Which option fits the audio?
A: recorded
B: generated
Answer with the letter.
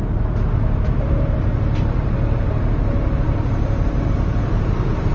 B